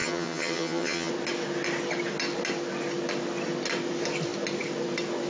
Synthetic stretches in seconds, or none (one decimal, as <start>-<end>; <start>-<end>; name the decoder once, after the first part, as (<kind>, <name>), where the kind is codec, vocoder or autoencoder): 0.0-1.1 (vocoder, HiFi-GAN)